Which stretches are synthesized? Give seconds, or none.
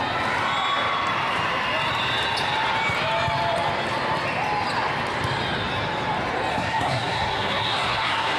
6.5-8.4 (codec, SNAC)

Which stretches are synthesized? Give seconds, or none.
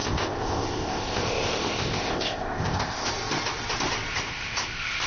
0.0-3.1 (codec, ZipCodec); 4.1-5.1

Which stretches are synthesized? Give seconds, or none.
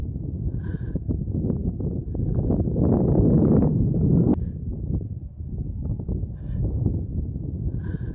1.6-2.4 (vocoder, BigVGAN v2); 4.3-5.7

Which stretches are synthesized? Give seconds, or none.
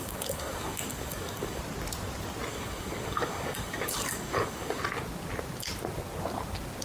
0.0-1.6 (codec, DAC); 2.5-4.8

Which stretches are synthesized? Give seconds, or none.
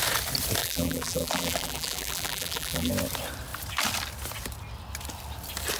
0.6-2.9 (vocoder, BigVGAN v2)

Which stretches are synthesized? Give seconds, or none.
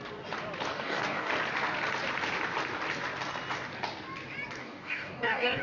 0.7-1.3 (codec, DAC); 4.6-5.6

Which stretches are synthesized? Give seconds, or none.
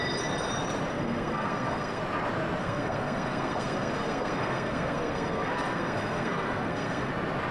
0.9-2.0 (codec, SNAC); 2.6-7.1